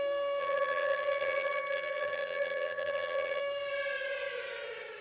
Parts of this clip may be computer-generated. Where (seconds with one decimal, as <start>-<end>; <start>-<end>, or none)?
0.4-3.4